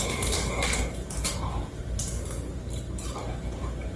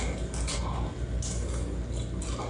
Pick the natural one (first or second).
second